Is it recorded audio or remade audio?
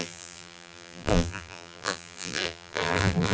remade